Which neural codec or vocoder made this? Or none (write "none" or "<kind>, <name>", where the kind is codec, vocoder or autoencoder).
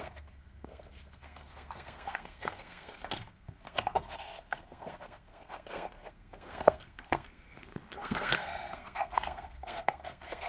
codec, SNAC